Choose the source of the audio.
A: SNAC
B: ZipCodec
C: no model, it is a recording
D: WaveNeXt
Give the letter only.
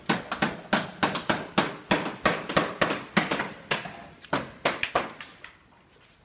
C